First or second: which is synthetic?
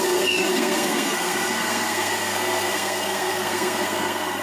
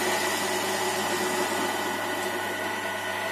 first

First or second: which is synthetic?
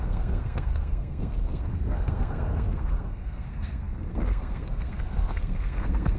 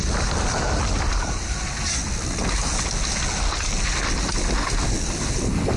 first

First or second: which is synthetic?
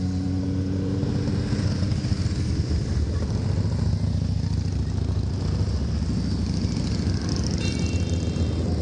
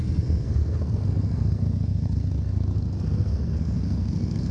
second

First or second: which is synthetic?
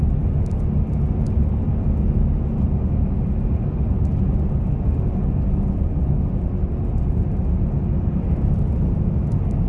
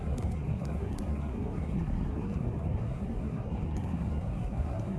second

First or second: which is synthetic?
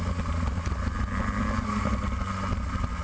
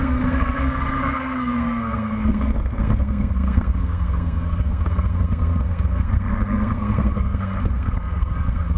second